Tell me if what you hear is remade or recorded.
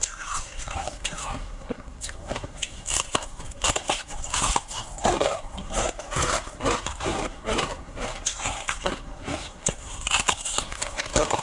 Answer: remade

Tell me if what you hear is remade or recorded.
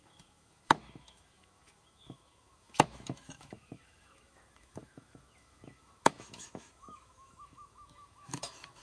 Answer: remade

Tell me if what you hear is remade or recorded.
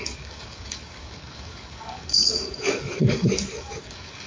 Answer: remade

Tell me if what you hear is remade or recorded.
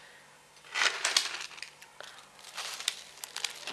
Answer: recorded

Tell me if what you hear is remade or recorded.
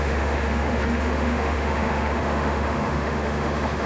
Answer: remade